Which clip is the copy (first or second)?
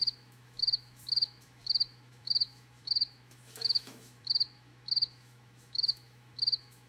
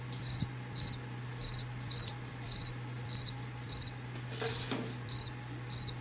first